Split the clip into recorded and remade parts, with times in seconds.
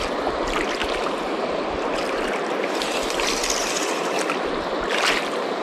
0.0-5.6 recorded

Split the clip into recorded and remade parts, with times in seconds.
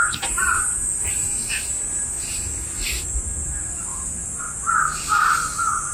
0.0-5.9 recorded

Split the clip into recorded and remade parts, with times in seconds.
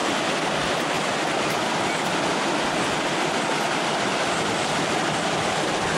0.0-6.0 recorded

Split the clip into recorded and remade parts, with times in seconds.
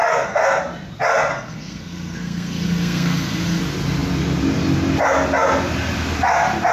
0.0-0.6 remade; 0.6-1.3 recorded; 1.3-3.6 remade; 3.6-6.7 recorded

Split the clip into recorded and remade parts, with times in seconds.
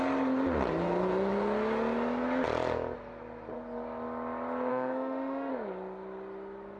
0.0-4.7 recorded; 4.7-5.5 remade; 5.5-6.8 recorded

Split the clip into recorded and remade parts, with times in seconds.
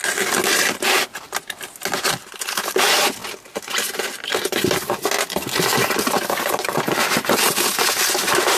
0.0-8.6 recorded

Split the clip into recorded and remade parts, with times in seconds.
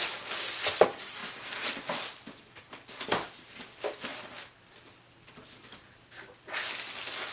0.0-7.3 recorded